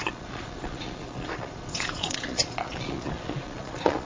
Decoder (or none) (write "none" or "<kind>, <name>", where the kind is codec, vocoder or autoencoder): vocoder, Vocos